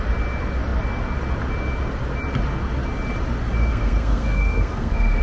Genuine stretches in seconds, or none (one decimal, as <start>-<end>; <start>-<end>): 0.0-3.6